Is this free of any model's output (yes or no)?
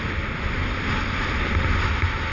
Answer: yes